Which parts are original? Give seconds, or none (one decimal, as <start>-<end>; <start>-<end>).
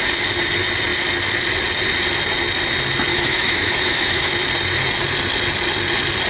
0.0-3.1; 4.3-6.3